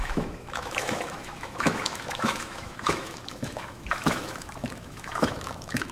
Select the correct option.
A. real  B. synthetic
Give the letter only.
B